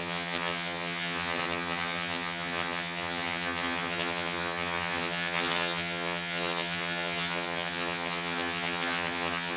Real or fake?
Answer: fake